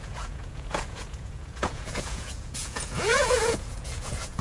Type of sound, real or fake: fake